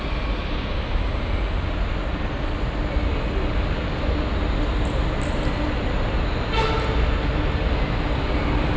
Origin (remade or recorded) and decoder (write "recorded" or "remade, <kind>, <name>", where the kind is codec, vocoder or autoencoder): recorded